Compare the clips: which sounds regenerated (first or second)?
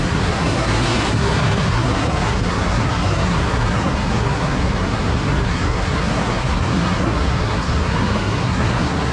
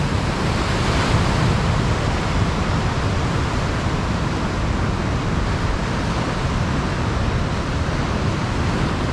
first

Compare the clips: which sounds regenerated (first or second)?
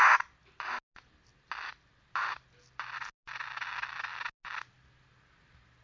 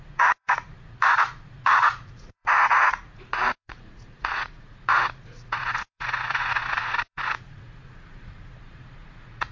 second